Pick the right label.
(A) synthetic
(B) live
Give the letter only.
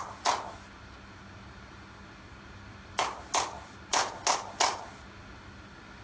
B